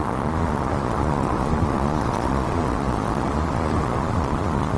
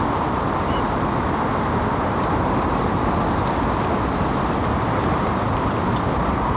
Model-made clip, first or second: first